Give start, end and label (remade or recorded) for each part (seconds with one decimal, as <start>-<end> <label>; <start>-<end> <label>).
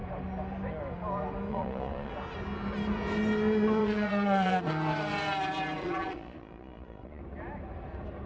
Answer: 0.0-1.5 recorded; 1.5-2.1 remade; 2.1-3.8 recorded; 3.8-4.6 remade; 4.6-5.8 recorded; 5.8-7.2 remade; 7.2-8.3 recorded